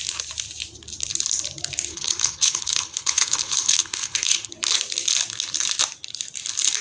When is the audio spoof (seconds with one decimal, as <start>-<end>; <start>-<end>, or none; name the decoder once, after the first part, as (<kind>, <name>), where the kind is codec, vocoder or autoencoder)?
1.9-4.5 (codec, HILCodec)